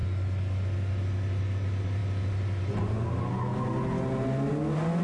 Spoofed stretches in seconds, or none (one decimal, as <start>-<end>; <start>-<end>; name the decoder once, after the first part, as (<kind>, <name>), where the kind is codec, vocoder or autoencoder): none